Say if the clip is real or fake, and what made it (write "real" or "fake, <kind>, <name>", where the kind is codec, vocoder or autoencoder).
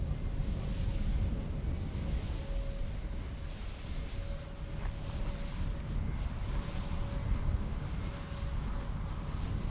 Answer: real